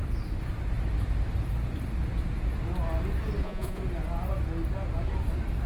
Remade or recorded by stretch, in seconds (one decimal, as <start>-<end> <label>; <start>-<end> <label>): 0.0-3.4 recorded; 3.4-3.8 remade; 3.8-5.7 recorded